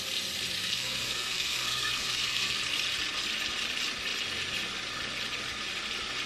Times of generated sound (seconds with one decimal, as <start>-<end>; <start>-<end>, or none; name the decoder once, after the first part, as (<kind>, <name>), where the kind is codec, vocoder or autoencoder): 0.6-2.6 (codec, SNAC)